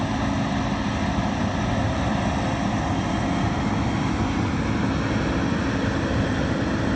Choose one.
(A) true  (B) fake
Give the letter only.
A